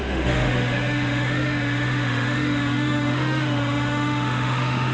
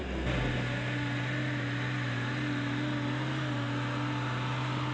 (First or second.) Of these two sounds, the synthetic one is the first